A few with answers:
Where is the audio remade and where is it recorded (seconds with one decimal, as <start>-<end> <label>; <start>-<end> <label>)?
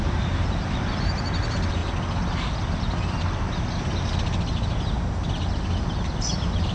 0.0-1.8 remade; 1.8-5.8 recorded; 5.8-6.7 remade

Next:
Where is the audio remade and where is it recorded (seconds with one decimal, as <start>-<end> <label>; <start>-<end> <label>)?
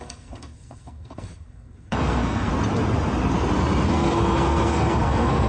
0.0-2.5 remade; 2.5-3.9 recorded; 3.9-5.5 remade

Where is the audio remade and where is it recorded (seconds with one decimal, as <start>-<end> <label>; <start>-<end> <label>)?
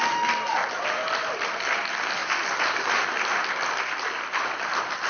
0.0-5.1 recorded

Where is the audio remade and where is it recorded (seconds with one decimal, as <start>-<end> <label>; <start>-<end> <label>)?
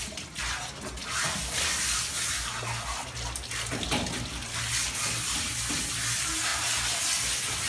0.0-7.7 recorded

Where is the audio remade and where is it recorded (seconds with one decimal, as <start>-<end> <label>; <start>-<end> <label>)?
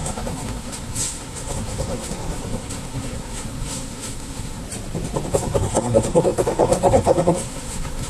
0.0-4.6 remade; 4.6-5.3 recorded; 5.3-8.1 remade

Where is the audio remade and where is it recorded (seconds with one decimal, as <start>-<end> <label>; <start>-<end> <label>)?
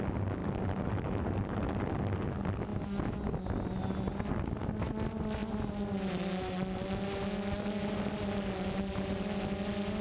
0.0-10.0 recorded